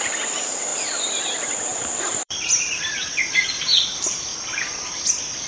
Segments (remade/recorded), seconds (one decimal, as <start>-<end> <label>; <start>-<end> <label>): 0.0-4.3 remade; 4.3-4.9 recorded; 4.9-5.5 remade